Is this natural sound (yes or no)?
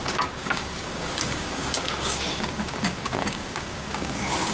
no